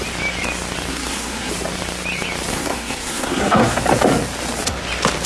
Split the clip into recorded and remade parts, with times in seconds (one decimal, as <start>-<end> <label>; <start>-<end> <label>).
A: 0.0-0.9 recorded; 0.9-1.5 remade; 1.5-2.5 recorded; 2.5-3.8 remade; 3.8-5.3 recorded